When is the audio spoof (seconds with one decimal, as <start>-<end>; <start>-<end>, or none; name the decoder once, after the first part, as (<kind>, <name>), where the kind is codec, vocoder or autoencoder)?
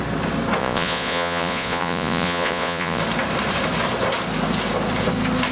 0.6-3.0 (vocoder, Vocos)